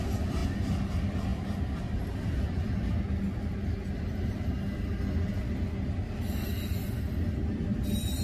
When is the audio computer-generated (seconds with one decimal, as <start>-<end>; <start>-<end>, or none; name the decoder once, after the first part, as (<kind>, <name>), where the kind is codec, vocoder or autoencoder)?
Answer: none